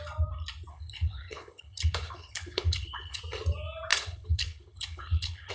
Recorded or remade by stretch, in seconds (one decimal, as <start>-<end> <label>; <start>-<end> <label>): 0.0-0.7 recorded; 0.7-3.2 remade; 3.2-3.9 recorded; 3.9-5.5 remade